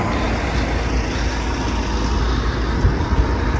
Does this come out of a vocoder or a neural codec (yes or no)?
no